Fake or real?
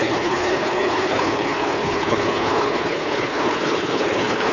fake